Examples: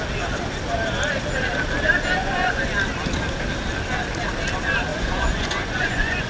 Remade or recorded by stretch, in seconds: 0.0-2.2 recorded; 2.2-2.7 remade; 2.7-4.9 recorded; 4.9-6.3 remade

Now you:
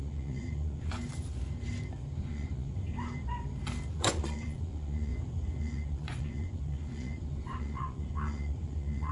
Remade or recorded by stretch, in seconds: 0.0-1.1 remade; 1.1-2.3 recorded; 2.3-2.8 remade; 2.8-3.9 recorded; 3.9-5.1 remade; 5.1-5.6 recorded; 5.6-9.1 remade

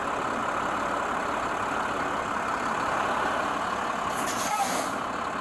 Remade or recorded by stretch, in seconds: 0.0-5.4 recorded